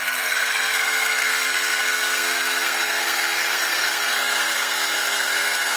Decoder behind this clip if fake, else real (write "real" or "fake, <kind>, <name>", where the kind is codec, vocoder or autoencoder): fake, codec, SNAC